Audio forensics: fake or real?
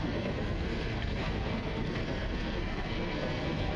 fake